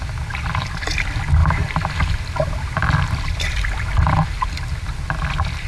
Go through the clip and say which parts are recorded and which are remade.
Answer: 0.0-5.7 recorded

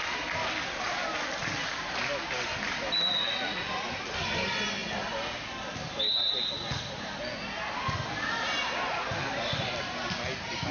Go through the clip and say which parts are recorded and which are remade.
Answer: 0.0-10.7 recorded